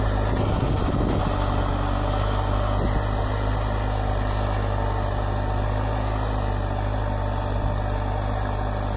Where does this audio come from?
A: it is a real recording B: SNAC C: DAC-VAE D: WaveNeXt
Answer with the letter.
A